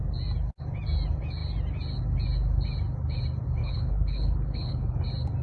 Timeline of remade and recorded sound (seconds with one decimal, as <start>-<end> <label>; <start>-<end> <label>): 0.0-3.6 recorded; 3.6-5.0 remade; 5.0-5.4 recorded

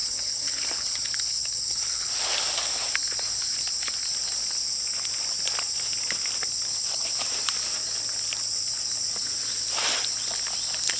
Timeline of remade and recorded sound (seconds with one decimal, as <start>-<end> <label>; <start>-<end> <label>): 0.0-2.0 remade; 2.0-11.0 recorded

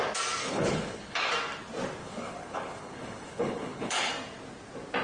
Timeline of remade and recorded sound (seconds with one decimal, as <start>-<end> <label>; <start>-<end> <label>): 0.0-0.4 recorded; 0.4-1.3 remade; 1.3-2.0 recorded; 2.0-4.1 remade; 4.1-5.0 recorded

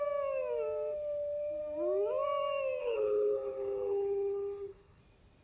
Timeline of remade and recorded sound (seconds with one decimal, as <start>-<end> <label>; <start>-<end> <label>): 0.0-2.8 recorded; 2.8-5.0 remade; 5.0-5.4 recorded